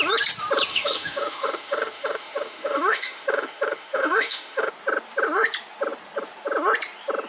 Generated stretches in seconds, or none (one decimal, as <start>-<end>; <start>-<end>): 0.7-4.7